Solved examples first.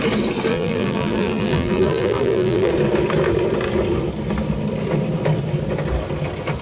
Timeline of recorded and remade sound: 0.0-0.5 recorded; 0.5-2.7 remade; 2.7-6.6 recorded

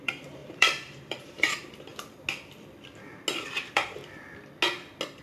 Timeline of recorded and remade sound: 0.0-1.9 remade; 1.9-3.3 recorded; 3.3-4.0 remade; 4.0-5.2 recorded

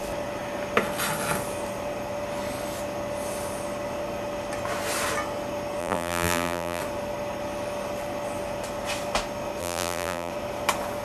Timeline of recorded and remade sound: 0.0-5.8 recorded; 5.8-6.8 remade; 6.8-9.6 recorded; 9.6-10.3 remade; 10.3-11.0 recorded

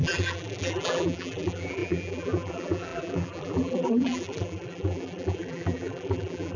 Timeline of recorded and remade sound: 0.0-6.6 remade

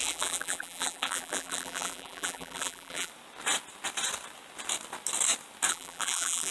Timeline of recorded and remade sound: 0.0-3.1 remade; 3.1-5.7 recorded; 5.7-6.5 remade